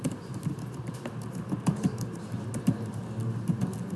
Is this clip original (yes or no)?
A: yes